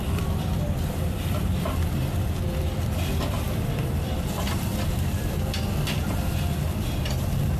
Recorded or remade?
remade